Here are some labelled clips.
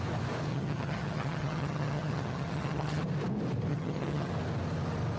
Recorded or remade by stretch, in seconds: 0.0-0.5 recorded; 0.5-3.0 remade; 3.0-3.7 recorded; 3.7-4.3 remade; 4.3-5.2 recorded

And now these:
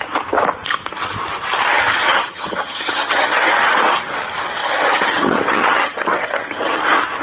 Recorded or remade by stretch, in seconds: 0.0-2.0 recorded; 2.0-3.5 remade; 3.5-4.6 recorded; 4.6-6.8 remade; 6.8-7.2 recorded

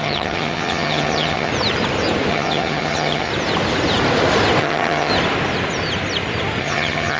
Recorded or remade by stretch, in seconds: 0.0-1.5 remade; 1.5-2.3 recorded; 2.3-3.3 remade; 3.3-4.6 recorded; 4.6-5.1 remade; 5.1-6.6 recorded; 6.6-7.2 remade